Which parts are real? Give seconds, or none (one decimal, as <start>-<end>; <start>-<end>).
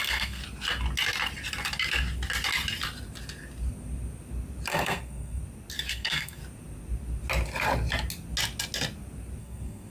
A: 0.4-4.7; 5.4-5.9; 6.4-9.4